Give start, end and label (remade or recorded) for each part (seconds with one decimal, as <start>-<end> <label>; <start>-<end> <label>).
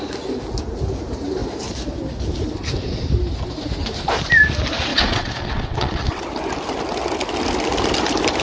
0.0-4.9 recorded; 4.9-6.2 remade; 6.2-8.4 recorded